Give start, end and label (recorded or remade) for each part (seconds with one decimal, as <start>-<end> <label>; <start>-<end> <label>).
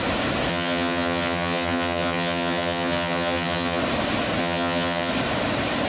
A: 0.0-0.5 recorded; 0.5-3.8 remade; 3.8-4.4 recorded; 4.4-5.1 remade; 5.1-5.9 recorded